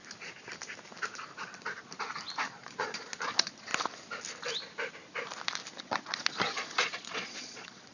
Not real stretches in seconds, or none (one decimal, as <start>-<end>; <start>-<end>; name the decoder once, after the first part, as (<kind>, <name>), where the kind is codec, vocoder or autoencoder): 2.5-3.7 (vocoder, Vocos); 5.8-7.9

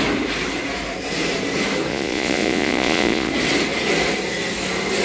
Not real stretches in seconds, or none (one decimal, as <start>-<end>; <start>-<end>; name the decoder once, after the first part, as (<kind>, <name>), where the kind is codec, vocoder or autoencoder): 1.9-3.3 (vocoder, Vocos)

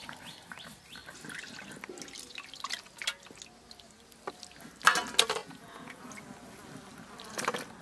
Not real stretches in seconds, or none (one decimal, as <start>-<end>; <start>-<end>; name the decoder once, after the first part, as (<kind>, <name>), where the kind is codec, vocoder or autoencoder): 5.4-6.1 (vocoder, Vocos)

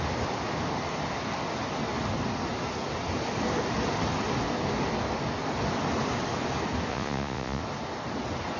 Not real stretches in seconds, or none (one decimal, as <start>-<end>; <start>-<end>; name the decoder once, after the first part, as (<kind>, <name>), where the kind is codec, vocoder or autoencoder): 6.9-7.6 (vocoder, Vocos)

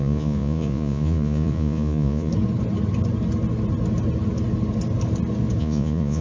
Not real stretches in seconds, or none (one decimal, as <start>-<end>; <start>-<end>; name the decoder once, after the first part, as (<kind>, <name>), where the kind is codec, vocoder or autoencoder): 0.0-2.3 (vocoder, Vocos); 5.6-6.2

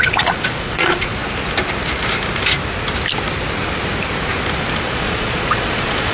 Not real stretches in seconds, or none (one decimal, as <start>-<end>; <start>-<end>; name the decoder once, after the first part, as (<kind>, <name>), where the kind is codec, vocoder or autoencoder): 0.0-1.1 (vocoder, Vocos); 4.8-6.1

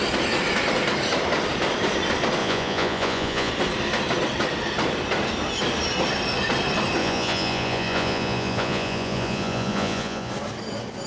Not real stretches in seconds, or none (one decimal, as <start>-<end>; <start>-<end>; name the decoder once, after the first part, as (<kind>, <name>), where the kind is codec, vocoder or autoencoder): 2.4-3.5 (vocoder, Vocos); 7.0-10.3